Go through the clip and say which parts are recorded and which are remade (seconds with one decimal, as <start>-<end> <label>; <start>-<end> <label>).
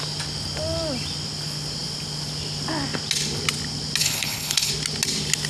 0.0-4.0 recorded; 4.0-4.7 remade; 4.7-5.5 recorded